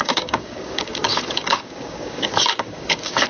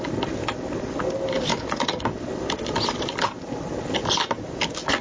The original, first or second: second